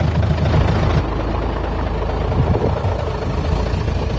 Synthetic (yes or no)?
no